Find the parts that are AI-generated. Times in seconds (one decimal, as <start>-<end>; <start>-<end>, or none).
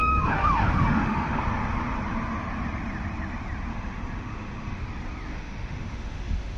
0.0-1.4; 3.7-4.8; 5.3-6.6